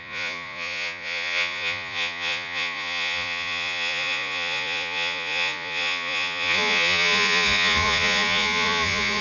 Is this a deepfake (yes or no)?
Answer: yes